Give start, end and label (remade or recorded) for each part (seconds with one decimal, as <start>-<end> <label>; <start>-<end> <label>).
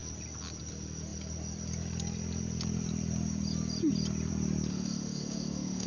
0.0-4.7 recorded; 4.7-5.9 remade